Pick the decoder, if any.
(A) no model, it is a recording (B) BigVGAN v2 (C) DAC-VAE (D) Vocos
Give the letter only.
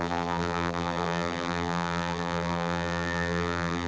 B